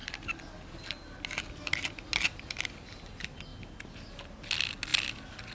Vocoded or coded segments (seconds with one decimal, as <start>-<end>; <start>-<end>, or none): none